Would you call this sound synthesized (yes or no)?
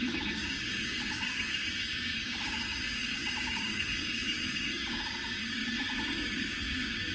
yes